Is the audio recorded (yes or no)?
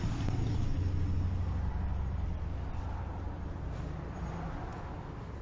yes